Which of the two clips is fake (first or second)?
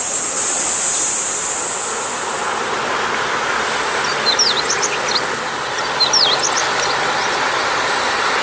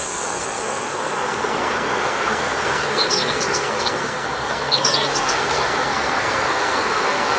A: second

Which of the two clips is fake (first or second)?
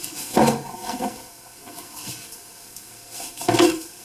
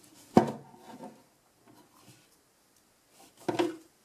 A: first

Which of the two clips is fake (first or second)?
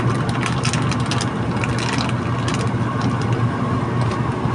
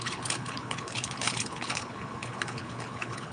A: second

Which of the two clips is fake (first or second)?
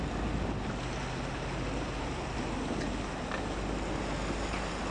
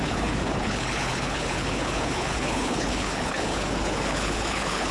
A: second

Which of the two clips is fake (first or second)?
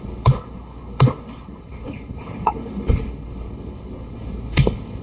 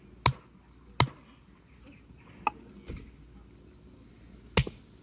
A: first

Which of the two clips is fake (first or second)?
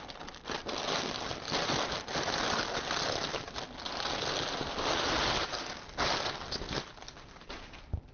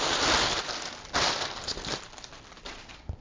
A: second